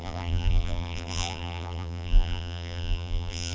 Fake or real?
fake